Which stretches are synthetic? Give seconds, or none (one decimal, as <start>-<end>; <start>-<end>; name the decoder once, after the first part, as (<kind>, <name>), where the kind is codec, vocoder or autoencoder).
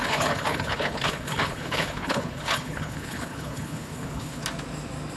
0.0-4.4 (codec, HILCodec)